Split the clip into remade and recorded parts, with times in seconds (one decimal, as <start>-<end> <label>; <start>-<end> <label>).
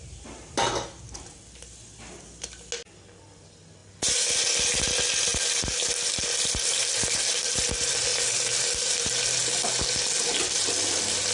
0.0-0.7 remade; 0.7-11.3 recorded